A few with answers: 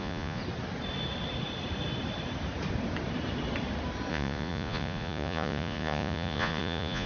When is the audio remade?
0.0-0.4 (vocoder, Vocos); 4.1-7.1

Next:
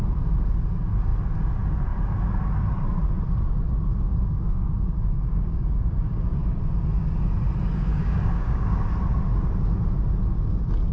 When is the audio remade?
4.1-6.6 (codec, DAC); 7.7-8.9

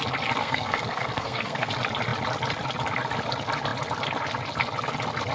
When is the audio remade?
0.4-1.7 (codec, SNAC)

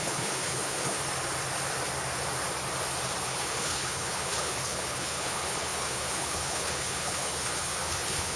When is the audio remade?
0.0-1.0 (codec, HILCodec); 3.2-8.4

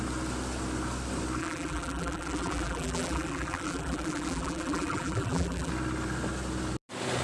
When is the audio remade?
1.4-5.7 (vocoder, BigVGAN v2)

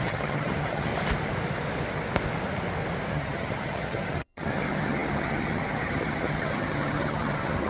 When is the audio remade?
0.0-0.9 (vocoder, HiFi-GAN); 3.1-7.7

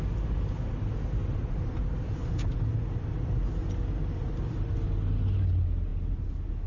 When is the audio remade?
none